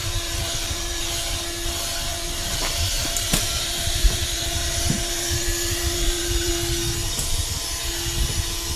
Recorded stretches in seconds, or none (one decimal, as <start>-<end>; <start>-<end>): 1.0-2.1; 6.5-7.0; 7.6-8.8